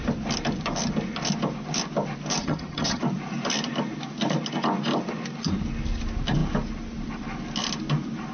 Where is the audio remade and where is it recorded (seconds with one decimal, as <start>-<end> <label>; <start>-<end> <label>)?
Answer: 0.0-2.4 recorded; 2.4-3.0 remade; 3.0-8.3 recorded